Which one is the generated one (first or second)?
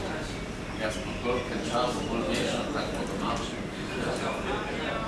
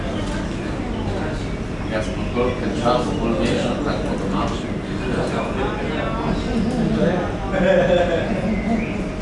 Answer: first